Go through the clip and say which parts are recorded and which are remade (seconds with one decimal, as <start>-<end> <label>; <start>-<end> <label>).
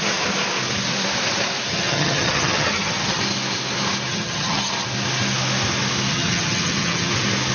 0.0-1.7 recorded; 1.7-3.2 remade; 3.2-4.1 recorded; 4.1-4.7 remade; 4.7-6.1 recorded; 6.1-7.1 remade; 7.1-7.5 recorded